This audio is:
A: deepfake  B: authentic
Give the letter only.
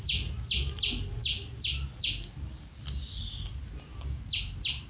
B